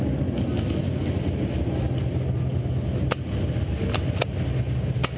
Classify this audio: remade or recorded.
recorded